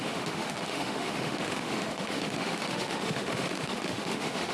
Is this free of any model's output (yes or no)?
no